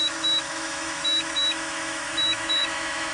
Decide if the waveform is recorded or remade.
remade